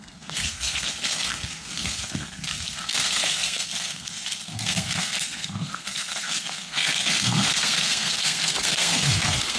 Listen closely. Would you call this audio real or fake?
fake